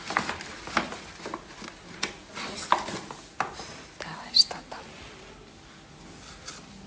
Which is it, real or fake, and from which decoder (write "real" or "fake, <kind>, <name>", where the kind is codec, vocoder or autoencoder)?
real